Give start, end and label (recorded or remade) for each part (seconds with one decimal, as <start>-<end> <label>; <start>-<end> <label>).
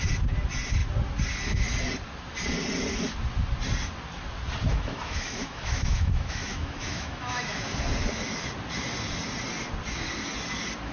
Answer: 0.0-4.7 recorded; 4.7-7.7 remade; 7.7-10.9 recorded